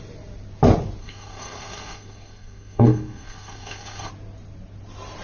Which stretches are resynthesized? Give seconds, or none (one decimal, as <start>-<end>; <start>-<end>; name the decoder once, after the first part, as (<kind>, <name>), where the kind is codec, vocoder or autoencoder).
1.0-4.1 (codec, SNAC)